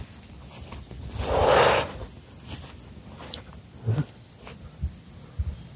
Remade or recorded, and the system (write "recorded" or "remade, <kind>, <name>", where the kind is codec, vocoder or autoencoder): recorded